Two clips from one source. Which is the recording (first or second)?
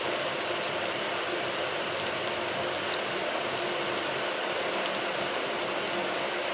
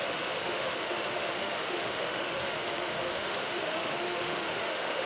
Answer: first